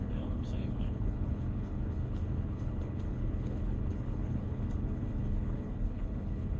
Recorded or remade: remade